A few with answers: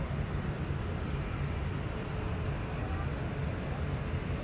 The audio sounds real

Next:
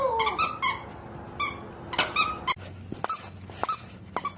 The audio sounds real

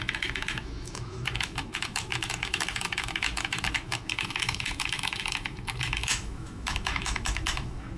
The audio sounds fake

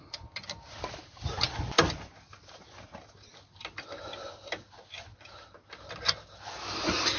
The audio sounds real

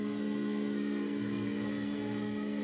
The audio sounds fake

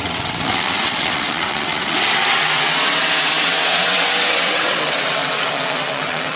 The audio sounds fake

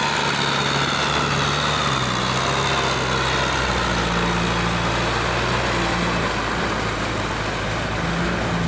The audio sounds real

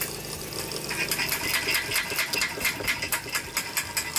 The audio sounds real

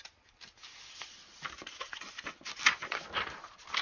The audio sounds real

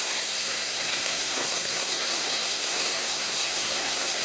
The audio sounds fake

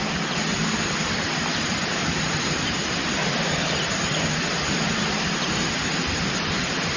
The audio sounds real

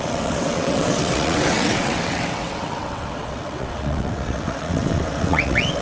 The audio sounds fake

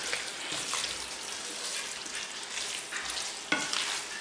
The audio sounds real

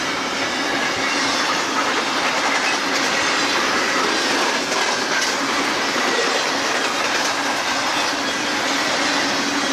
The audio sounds real